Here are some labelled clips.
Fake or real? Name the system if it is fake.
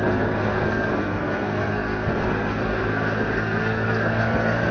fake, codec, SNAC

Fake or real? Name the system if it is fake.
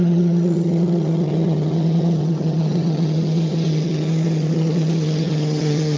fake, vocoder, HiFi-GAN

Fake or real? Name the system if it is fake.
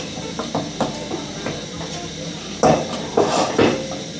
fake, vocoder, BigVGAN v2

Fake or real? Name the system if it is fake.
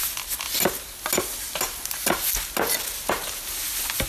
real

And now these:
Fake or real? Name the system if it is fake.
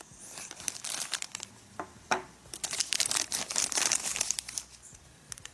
fake, vocoder, BigVGAN v2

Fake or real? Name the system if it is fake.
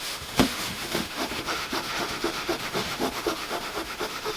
fake, autoencoder, DAC-VAE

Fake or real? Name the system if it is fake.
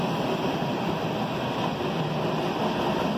real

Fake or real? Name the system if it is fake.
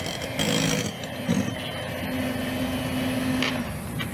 real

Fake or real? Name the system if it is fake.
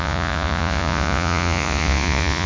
fake, vocoder, Vocos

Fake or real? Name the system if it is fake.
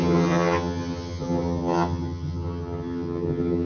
fake, vocoder, HiFi-GAN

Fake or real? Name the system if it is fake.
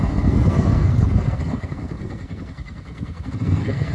fake, codec, SNAC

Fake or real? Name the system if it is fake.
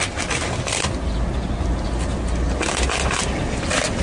real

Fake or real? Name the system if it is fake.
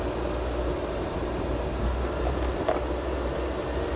real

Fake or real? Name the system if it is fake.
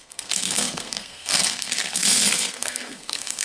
fake, codec, SNAC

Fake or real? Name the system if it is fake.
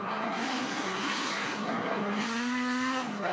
fake, codec, SNAC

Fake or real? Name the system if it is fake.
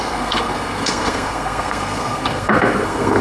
fake, codec, SNAC